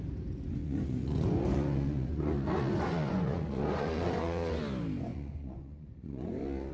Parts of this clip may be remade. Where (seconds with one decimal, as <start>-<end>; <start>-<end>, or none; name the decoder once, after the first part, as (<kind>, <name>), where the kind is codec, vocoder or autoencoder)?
0.6-4.6 (vocoder, Vocos); 5.1-6.7